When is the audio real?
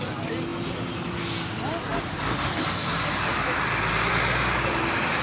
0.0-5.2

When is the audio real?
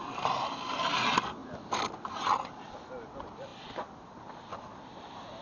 0.0-5.4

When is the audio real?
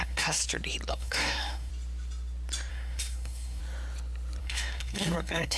0.4-0.9; 1.7-2.7; 3.6-4.4